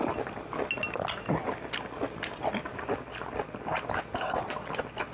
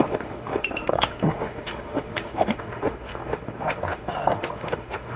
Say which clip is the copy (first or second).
second